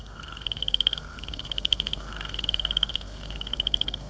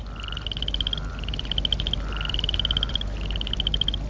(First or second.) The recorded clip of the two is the second